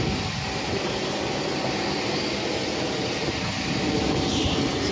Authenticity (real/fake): real